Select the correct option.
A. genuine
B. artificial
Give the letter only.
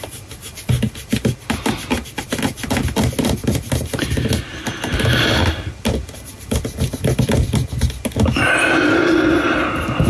A